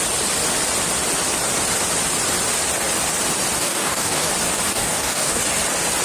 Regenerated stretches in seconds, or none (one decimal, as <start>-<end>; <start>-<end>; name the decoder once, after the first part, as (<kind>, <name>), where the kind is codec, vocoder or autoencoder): 3.6-4.3 (codec, DAC); 4.7-5.4